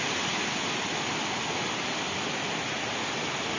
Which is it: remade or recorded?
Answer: recorded